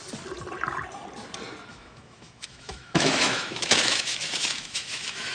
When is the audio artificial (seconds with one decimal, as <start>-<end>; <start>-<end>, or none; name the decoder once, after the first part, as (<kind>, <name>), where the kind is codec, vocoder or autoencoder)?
1.7-5.3 (autoencoder, DAC-VAE)